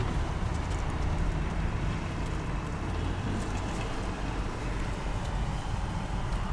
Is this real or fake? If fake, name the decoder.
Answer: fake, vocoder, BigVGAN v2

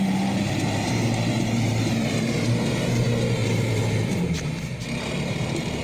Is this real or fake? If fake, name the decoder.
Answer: fake, vocoder, BigVGAN v2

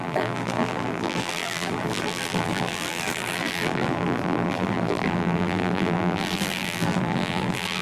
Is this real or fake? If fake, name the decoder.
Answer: fake, vocoder, BigVGAN v2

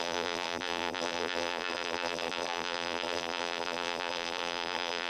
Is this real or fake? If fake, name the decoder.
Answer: fake, vocoder, BigVGAN v2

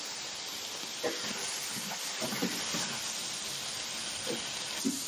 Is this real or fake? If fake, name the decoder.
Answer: real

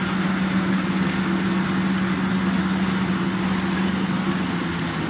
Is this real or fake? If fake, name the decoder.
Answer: real